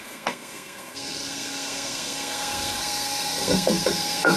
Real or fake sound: fake